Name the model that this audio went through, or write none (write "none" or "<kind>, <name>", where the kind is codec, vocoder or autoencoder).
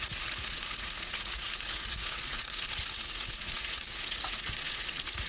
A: vocoder, Vocos